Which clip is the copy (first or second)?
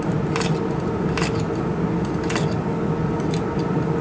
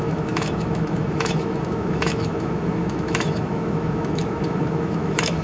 second